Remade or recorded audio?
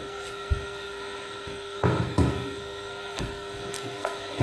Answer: remade